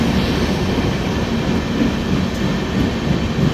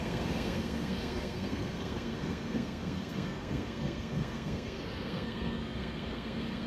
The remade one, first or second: second